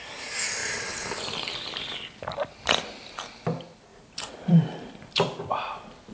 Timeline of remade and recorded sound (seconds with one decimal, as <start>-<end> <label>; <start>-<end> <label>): 0.0-0.6 recorded; 0.6-1.4 remade; 1.4-3.9 recorded; 3.9-5.4 remade; 5.4-6.1 recorded